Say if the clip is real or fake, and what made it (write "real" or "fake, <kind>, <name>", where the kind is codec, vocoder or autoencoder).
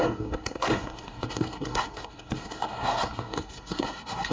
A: fake, codec, SNAC